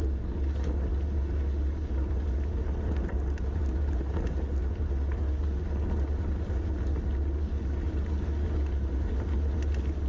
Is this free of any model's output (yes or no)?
yes